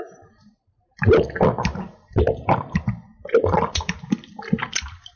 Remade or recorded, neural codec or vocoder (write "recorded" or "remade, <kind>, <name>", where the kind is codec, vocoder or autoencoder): remade, vocoder, BigVGAN v2